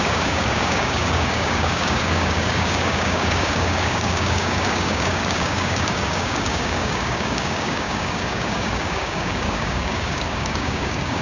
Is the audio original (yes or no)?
no